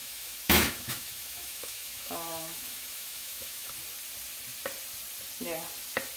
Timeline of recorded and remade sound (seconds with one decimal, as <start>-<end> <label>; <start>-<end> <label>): 0.0-3.7 remade; 3.7-6.2 recorded